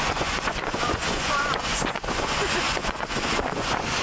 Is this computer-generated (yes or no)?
yes